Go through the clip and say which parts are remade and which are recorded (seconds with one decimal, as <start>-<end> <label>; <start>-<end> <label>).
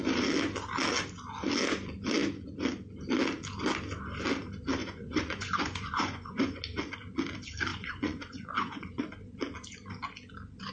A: 0.0-4.8 recorded; 4.8-6.6 remade; 6.6-7.7 recorded; 7.7-9.0 remade; 9.0-10.7 recorded